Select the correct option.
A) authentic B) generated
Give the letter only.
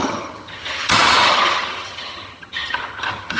B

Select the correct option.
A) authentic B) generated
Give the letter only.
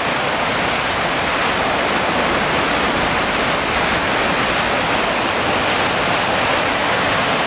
A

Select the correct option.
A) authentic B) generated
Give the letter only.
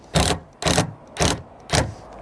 A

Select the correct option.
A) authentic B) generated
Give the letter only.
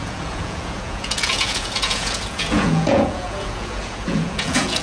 B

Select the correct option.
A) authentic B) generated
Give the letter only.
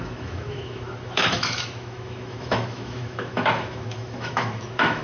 B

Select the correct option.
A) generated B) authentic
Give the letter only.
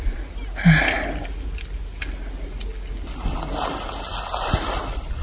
B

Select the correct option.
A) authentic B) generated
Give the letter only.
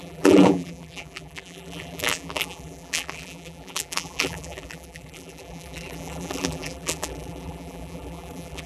B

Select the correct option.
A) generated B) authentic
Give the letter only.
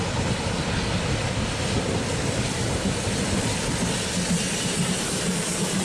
B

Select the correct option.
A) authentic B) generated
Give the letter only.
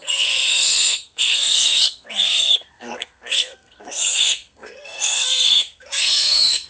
B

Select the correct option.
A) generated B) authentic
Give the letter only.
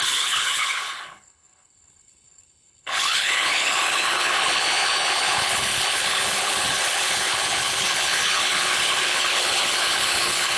A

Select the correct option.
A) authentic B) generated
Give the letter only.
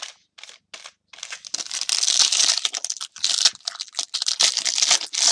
A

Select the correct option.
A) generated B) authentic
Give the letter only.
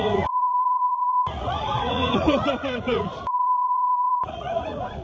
A